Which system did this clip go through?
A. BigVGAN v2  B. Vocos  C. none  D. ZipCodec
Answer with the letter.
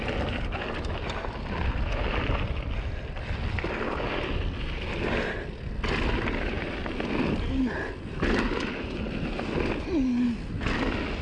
C